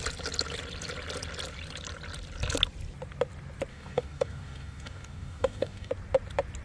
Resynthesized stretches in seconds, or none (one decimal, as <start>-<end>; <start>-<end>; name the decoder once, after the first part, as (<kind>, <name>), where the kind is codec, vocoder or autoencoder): 3.7-5.9 (codec, DAC)